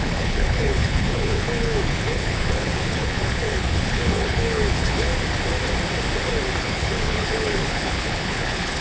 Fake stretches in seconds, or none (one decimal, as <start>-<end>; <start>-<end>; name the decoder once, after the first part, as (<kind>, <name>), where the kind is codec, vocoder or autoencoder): 0.0-5.1 (codec, HILCodec); 6.6-8.8